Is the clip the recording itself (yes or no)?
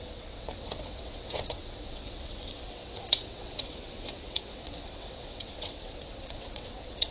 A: no